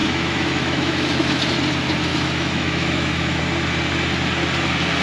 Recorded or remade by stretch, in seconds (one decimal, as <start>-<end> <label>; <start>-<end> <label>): 0.0-1.4 remade; 1.4-2.1 recorded; 2.1-3.4 remade; 3.4-5.0 recorded